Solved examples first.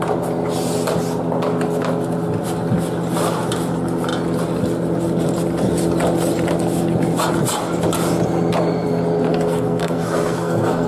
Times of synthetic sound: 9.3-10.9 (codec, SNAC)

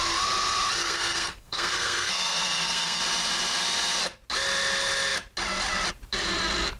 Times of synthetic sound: 0.8-3.0 (codec, SNAC)